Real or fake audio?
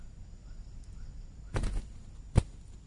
real